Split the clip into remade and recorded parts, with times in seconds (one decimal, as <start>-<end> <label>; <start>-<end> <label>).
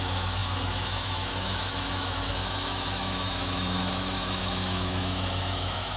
0.0-6.0 remade